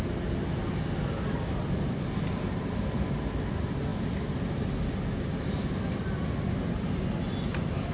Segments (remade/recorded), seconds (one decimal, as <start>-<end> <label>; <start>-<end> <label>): 0.0-7.9 recorded